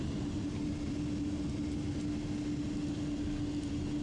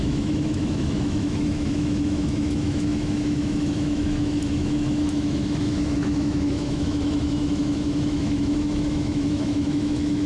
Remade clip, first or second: second